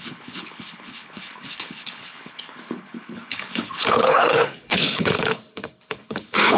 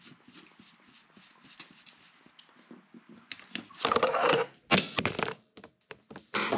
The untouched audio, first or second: second